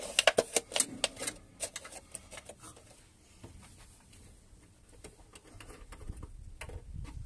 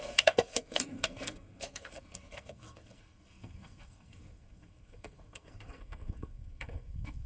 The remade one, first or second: second